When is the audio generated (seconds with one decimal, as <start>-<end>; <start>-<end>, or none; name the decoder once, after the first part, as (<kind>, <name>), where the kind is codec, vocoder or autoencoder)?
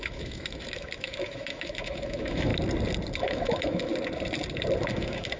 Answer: 0.0-2.5 (autoencoder, DAC-VAE); 3.2-3.9; 4.9-5.4